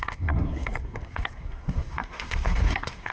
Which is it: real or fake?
fake